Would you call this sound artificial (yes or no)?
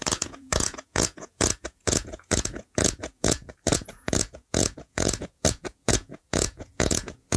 yes